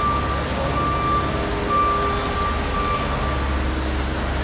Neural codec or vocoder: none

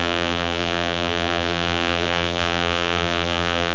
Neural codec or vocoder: vocoder, BigVGAN v2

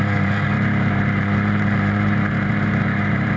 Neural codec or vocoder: vocoder, BigVGAN v2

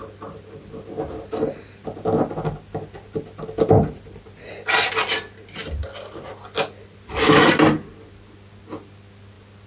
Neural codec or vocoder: none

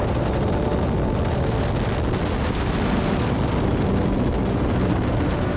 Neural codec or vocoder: none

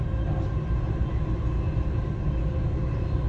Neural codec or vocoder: none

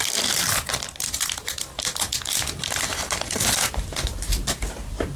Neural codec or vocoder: vocoder, BigVGAN v2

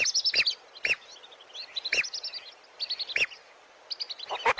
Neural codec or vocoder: none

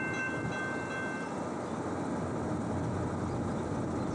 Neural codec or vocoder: none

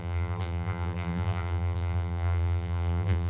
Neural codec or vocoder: vocoder, BigVGAN v2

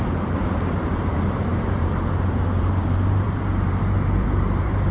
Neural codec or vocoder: vocoder, BigVGAN v2